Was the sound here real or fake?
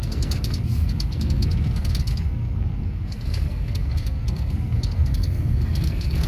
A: fake